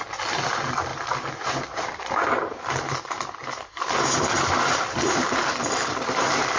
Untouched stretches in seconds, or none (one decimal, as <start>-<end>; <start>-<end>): 0.0-0.9; 2.6-3.4